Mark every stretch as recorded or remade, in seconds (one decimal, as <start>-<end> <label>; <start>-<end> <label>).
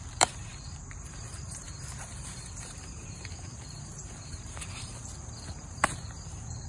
0.0-4.9 remade; 4.9-5.7 recorded; 5.7-6.7 remade